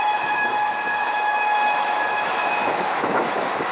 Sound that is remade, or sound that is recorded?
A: remade